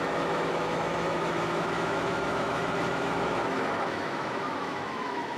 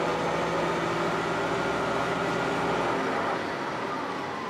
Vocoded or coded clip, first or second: first